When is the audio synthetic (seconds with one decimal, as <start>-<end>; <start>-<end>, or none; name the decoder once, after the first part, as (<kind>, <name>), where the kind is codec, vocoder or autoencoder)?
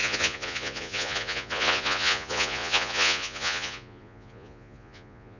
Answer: 0.0-5.4 (vocoder, Vocos)